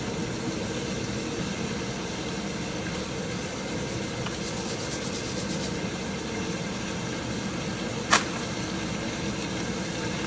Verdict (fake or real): real